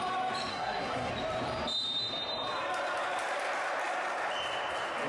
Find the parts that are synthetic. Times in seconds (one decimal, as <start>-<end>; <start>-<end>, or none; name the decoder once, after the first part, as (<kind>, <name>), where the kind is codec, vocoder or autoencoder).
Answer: 0.5-1.1 (codec, SNAC)